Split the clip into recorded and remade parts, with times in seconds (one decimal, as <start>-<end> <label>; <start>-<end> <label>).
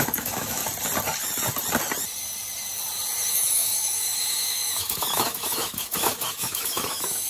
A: 0.0-0.6 remade; 0.6-3.3 recorded; 3.3-7.3 remade